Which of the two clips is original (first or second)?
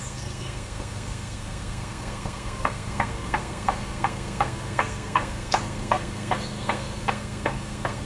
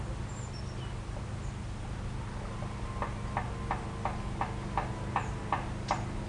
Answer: second